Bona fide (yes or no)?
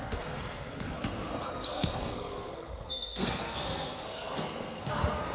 no